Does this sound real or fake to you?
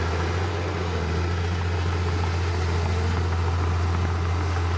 real